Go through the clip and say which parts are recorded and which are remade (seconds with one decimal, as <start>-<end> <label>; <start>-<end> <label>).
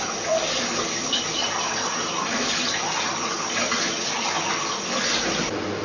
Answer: 0.0-5.8 recorded